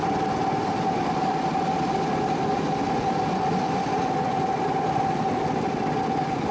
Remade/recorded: recorded